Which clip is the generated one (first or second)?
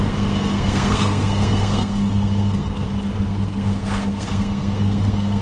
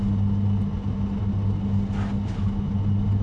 first